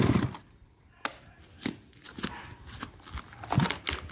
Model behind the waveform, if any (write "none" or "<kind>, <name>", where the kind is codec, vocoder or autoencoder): none